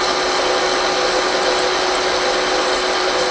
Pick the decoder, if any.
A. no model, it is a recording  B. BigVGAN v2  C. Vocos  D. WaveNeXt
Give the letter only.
A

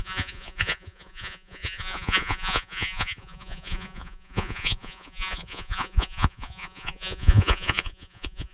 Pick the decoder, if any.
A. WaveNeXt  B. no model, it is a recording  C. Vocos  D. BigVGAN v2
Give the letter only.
C